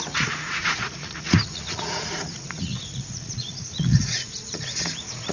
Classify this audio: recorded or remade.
remade